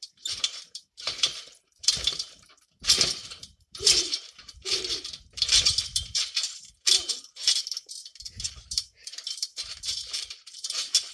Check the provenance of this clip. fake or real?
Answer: fake